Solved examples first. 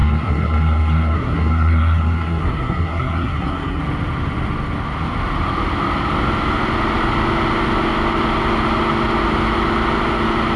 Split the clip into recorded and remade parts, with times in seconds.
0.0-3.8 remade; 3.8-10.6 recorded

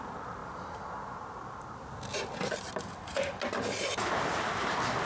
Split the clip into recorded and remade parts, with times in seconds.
0.0-0.4 remade; 0.4-3.5 recorded; 3.5-5.1 remade